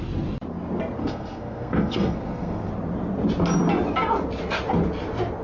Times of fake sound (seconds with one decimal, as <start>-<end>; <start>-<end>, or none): 1.0-2.7

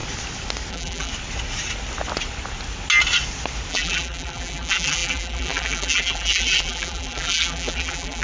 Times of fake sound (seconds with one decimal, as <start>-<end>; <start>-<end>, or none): 0.7-1.1; 3.7-8.2

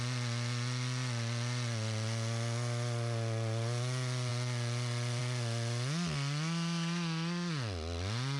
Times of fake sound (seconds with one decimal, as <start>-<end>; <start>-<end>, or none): none

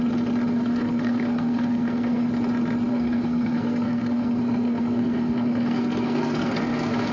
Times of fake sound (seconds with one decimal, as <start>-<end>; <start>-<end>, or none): 0.5-2.3; 2.9-7.1

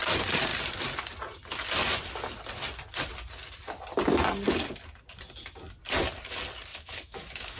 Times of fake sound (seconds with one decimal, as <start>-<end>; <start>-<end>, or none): 6.7-7.6

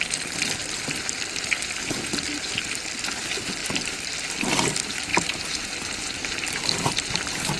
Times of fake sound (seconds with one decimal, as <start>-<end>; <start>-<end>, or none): 3.6-4.3; 5.1-7.6